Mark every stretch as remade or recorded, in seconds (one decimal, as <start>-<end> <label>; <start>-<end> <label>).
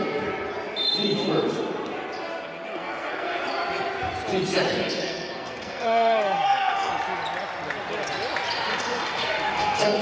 0.0-2.7 recorded; 2.7-3.4 remade; 3.4-4.8 recorded; 4.8-6.9 remade; 6.9-8.7 recorded; 8.7-10.0 remade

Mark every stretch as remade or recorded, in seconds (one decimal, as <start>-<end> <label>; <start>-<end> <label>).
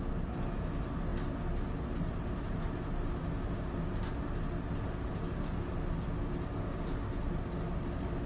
0.0-8.3 recorded